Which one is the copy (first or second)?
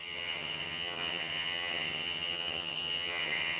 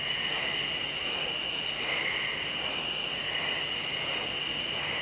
first